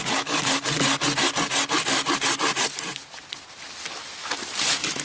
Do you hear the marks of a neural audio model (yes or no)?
no